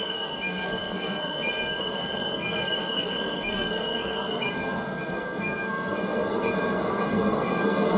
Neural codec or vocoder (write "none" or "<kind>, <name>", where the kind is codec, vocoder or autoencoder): codec, SNAC